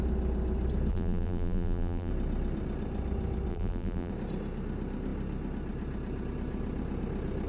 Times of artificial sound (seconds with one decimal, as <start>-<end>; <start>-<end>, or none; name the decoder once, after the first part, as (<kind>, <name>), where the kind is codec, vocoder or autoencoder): 0.9-2.1 (vocoder, BigVGAN v2); 3.5-4.1